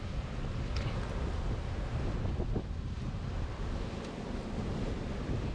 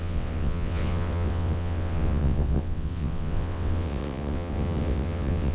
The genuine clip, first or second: first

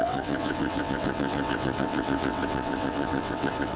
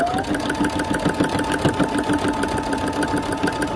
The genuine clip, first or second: second